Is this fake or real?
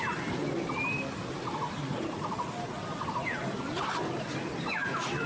real